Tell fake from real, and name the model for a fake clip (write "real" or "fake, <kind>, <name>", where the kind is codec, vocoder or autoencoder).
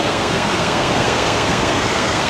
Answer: fake, codec, SNAC